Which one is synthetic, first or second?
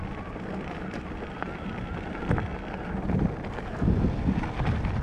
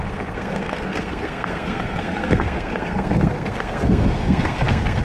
second